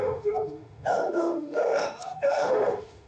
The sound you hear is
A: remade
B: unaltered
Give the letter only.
A